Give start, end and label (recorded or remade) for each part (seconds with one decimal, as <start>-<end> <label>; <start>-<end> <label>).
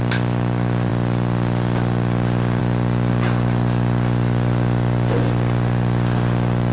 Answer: 0.0-6.7 recorded